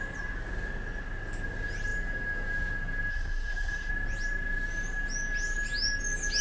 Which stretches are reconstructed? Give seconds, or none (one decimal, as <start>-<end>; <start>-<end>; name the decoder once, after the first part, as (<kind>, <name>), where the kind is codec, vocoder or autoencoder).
3.1-3.9 (codec, SNAC)